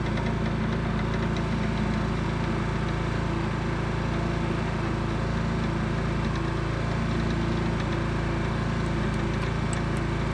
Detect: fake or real real